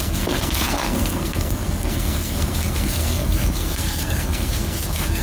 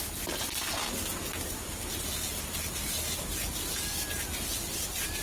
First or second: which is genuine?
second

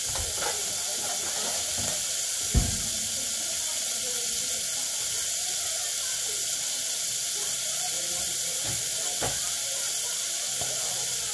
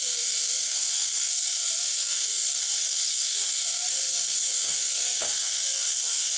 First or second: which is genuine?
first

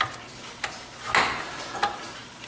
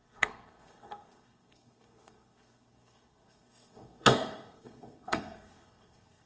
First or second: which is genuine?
first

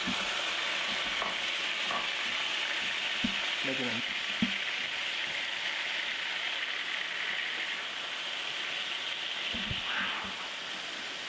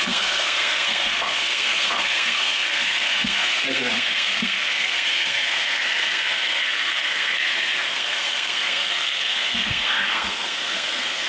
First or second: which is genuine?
first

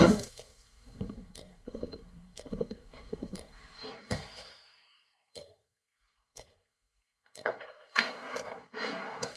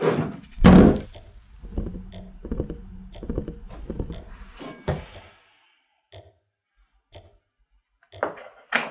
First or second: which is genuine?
second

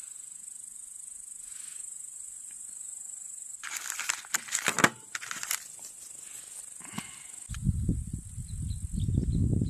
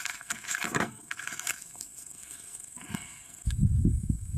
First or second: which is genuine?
first